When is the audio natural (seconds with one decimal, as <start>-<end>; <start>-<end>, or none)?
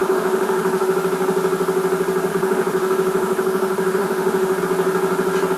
0.9-2.3; 4.6-5.6